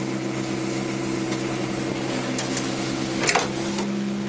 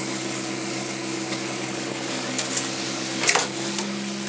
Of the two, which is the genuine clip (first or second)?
first